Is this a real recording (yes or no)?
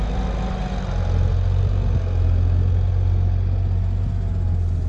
yes